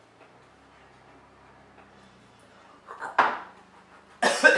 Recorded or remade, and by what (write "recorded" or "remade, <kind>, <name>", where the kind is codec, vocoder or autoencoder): recorded